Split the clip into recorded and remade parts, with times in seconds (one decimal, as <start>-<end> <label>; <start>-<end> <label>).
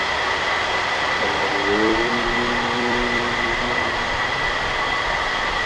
0.0-1.5 recorded; 1.5-4.9 remade; 4.9-5.7 recorded